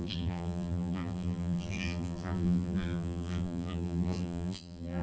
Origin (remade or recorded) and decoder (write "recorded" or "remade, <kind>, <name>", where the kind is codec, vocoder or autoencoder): remade, vocoder, BigVGAN v2